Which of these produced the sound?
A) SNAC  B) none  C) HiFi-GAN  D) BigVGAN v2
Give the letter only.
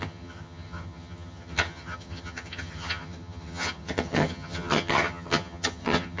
C